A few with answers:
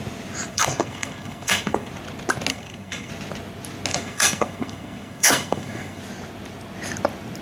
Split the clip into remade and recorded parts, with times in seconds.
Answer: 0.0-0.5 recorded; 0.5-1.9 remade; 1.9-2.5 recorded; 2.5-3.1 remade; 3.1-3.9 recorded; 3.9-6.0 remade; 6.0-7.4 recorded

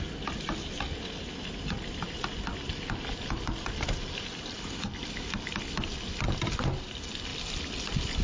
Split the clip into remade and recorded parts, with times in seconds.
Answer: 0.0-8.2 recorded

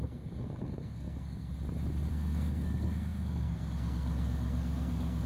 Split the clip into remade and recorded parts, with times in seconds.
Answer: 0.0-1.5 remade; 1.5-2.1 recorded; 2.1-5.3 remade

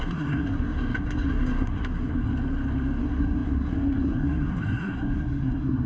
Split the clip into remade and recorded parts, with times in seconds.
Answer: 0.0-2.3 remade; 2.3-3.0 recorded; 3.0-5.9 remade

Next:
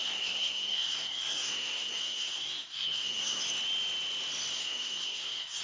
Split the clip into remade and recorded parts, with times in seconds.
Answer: 0.0-3.4 remade; 3.4-4.5 recorded; 4.5-5.6 remade

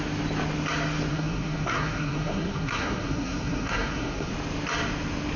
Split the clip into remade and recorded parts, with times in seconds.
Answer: 0.0-1.1 recorded; 1.1-4.3 remade; 4.3-5.4 recorded

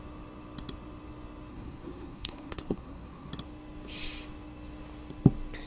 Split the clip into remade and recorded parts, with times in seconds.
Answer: 0.0-1.5 recorded; 1.5-3.3 remade; 3.3-5.7 recorded

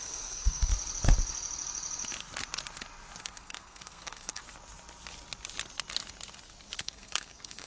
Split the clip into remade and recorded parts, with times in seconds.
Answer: 0.0-0.7 remade; 0.7-3.2 recorded; 3.2-4.4 remade; 4.4-6.8 recorded; 6.8-7.7 remade